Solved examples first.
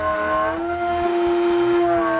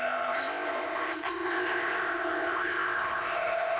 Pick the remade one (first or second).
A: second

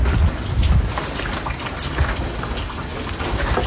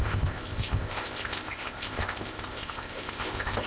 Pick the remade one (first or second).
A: second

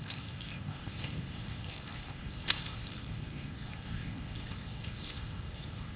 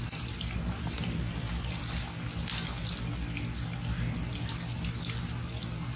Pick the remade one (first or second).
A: first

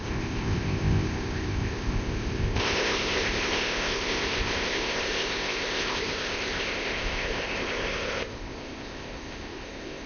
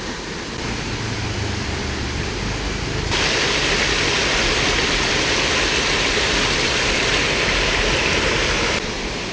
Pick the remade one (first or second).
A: first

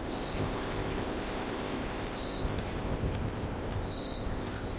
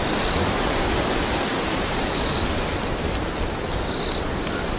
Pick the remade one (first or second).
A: first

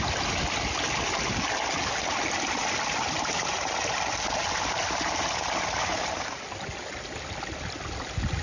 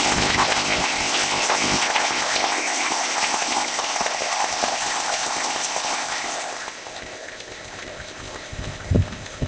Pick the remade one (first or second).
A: second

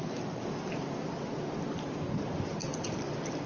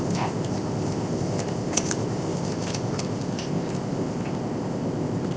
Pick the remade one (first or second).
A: second